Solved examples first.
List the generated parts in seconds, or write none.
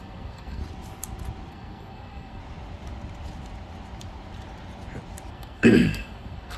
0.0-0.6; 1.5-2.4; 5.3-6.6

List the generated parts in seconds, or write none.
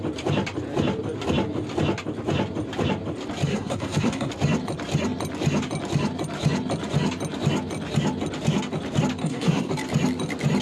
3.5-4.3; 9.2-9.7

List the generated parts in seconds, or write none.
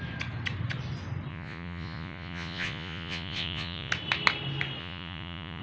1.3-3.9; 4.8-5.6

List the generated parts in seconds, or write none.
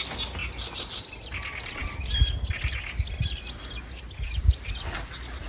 none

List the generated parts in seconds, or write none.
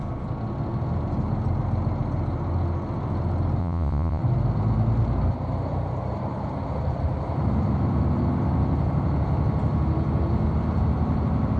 3.6-4.2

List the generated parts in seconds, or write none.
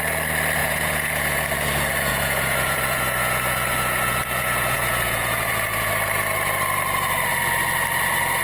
0.6-1.4; 2.1-5.9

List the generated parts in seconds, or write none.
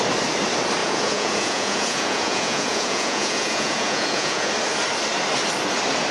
0.8-4.5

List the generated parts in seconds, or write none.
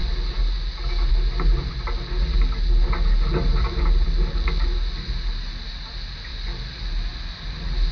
none